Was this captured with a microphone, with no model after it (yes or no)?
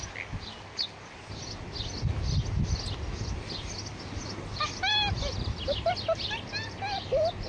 yes